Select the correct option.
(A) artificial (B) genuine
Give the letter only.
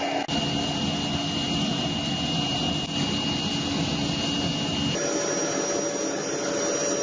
B